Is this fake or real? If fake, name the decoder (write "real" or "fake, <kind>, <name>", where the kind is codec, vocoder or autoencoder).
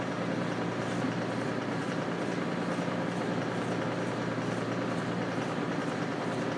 real